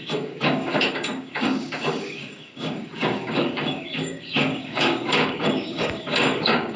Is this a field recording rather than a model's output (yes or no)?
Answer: no